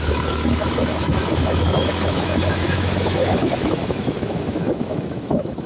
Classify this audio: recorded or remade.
remade